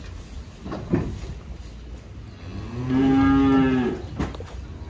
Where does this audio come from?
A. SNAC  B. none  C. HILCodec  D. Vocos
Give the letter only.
B